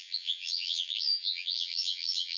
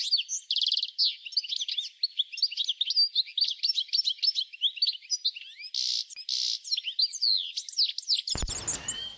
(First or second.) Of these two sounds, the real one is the second